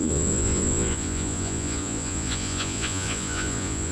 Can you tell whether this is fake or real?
fake